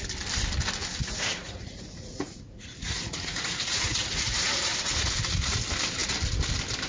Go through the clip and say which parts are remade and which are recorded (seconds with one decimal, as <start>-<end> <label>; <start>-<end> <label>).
0.0-1.0 recorded; 1.0-5.1 remade; 5.1-6.9 recorded